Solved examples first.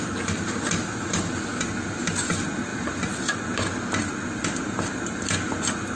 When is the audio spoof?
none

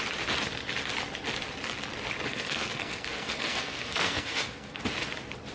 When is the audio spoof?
2.3-4.8